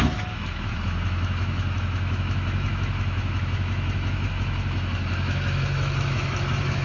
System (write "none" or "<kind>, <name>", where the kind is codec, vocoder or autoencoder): autoencoder, DAC-VAE